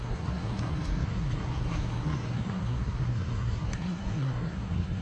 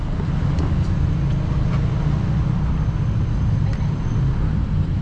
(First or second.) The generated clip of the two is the first